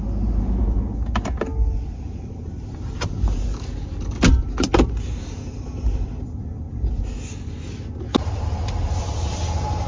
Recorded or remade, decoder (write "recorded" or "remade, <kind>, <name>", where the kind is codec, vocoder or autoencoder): recorded